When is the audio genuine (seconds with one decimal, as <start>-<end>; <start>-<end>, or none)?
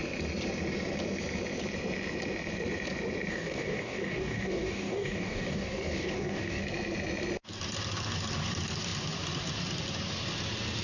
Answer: 0.0-3.3; 6.6-10.8